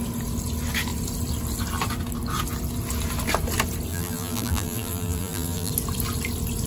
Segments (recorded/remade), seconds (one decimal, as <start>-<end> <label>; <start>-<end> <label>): 0.0-3.9 recorded; 3.9-5.7 remade; 5.7-6.7 recorded